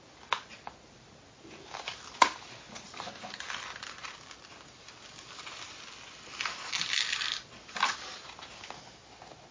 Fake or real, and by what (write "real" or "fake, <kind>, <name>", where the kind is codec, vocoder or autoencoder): real